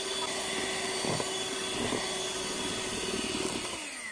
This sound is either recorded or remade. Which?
recorded